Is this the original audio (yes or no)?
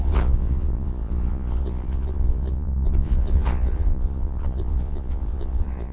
no